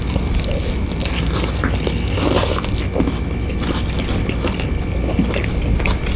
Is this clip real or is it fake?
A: real